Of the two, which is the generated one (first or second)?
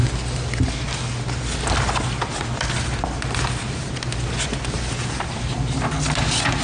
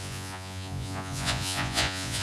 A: second